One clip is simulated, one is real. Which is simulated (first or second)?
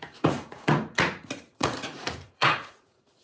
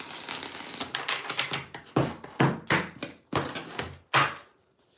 first